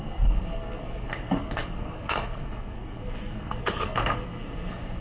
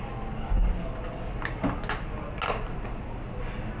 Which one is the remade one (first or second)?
first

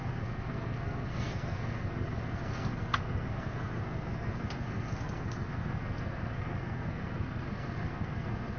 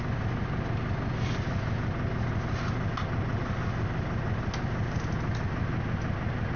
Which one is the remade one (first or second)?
first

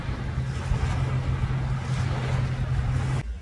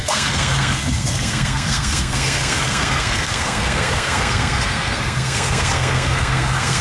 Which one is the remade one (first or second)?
second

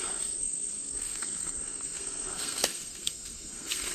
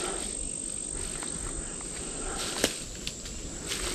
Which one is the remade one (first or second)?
first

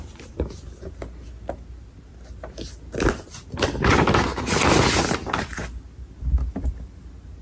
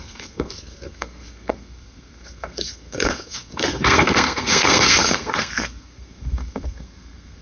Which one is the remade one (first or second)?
second